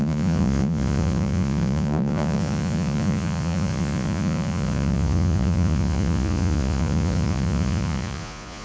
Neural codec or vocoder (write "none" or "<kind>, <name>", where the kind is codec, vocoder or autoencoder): vocoder, Vocos